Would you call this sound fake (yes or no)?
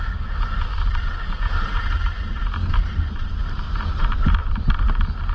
no